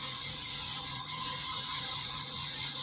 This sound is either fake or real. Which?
fake